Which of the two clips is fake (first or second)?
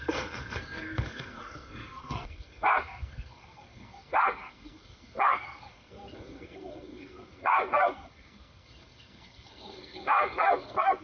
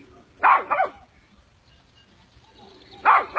first